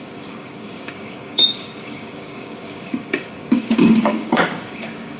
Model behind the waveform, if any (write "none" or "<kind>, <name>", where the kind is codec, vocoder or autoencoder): codec, DAC